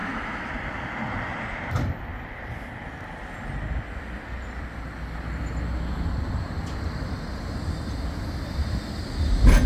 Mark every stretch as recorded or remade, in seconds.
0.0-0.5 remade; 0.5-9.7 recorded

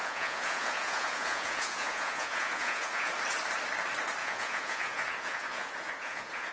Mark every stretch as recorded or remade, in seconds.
0.0-3.1 remade; 3.1-4.2 recorded; 4.2-6.5 remade

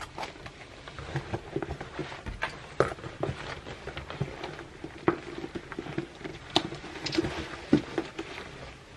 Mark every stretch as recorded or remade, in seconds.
0.0-6.3 recorded; 6.3-7.8 remade; 7.8-9.0 recorded

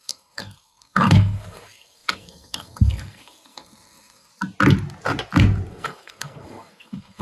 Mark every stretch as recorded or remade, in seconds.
0.0-4.3 remade; 4.3-5.7 recorded; 5.7-7.2 remade

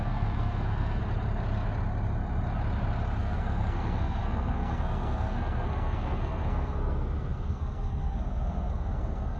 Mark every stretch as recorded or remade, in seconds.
0.0-1.0 remade; 1.0-3.2 recorded; 3.2-9.4 remade

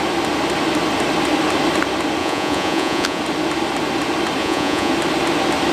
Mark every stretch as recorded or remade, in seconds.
0.0-2.2 recorded; 2.2-3.2 remade; 3.2-4.4 recorded; 4.4-4.9 remade; 4.9-5.7 recorded

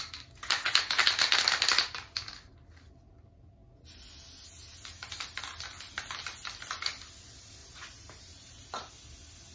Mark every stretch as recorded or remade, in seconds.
0.0-7.6 recorded; 7.6-8.9 remade; 8.9-9.5 recorded